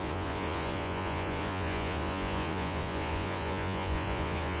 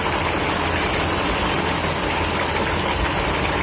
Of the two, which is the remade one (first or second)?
first